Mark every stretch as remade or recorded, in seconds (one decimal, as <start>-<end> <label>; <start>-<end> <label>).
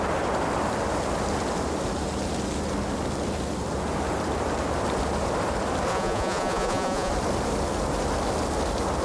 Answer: 0.0-5.9 recorded; 5.9-7.1 remade; 7.1-9.0 recorded